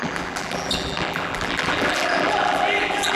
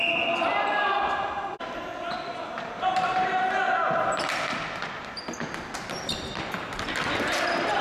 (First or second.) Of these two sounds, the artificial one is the first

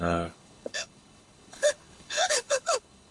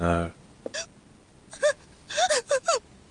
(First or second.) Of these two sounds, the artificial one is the first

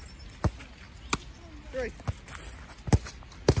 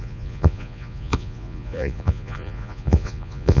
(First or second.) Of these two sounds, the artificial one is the second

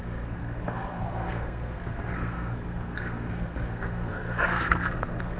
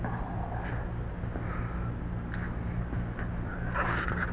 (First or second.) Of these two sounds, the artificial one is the first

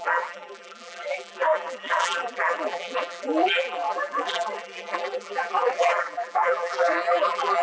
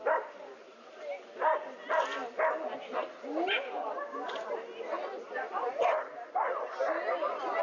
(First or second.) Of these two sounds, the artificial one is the first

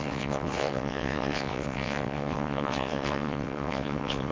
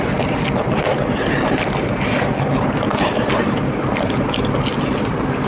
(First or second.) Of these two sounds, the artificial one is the first